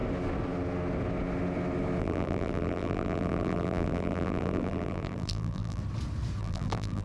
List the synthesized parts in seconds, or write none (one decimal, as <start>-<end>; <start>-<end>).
2.0-5.8; 6.4-7.0